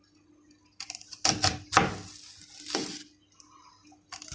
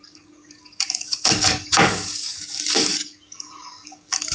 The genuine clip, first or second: first